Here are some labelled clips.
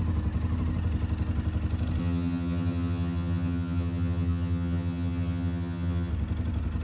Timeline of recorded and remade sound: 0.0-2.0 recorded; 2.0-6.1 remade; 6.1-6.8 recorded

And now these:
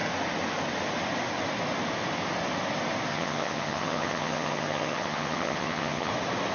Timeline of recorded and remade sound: 0.0-3.1 recorded; 3.1-6.1 remade; 6.1-6.5 recorded

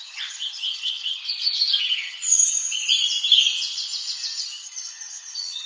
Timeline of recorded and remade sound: 0.0-1.2 remade; 1.2-1.8 recorded; 1.8-2.8 remade; 2.8-4.4 recorded; 4.4-5.7 remade

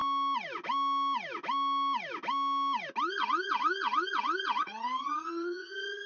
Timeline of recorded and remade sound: 0.0-3.1 recorded; 3.1-6.1 remade

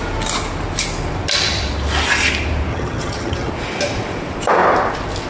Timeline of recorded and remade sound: 0.0-2.7 recorded; 2.7-3.5 remade; 3.5-5.3 recorded

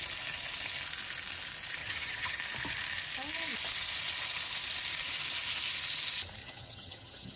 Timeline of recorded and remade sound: 0.0-1.8 recorded; 1.8-2.4 remade; 2.4-6.4 recorded; 6.4-7.4 remade

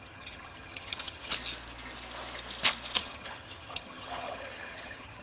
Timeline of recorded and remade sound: 0.0-1.3 remade; 1.3-3.0 recorded; 3.0-5.2 remade